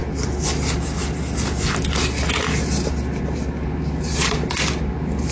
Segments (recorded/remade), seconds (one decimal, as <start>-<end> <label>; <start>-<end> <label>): 0.0-5.3 recorded